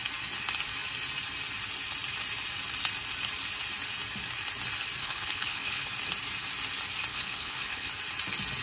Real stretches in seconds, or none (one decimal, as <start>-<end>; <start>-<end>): 0.0-5.0; 5.9-7.1; 7.9-8.6